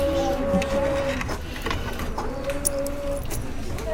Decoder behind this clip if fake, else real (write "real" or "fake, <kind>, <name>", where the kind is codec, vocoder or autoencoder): real